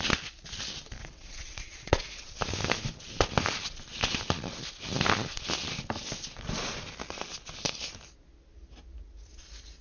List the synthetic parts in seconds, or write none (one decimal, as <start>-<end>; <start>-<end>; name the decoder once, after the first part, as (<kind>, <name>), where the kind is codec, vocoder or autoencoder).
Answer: 1.0-2.3 (vocoder, WaveNeXt)